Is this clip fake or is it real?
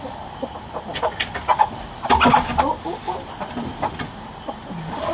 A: real